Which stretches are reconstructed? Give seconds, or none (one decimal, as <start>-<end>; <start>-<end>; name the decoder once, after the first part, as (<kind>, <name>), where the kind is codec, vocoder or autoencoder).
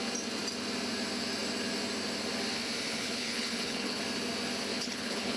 3.0-4.0 (codec, HILCodec); 4.7-5.4